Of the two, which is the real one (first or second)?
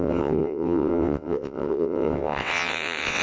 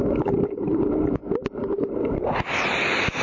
second